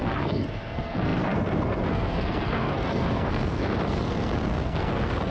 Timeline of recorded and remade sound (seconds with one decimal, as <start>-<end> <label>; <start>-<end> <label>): 0.0-5.3 remade